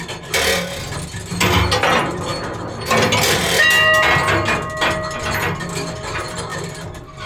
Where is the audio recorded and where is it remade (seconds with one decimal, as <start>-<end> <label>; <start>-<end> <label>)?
0.0-7.3 recorded